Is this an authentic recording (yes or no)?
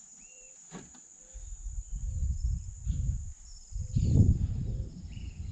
no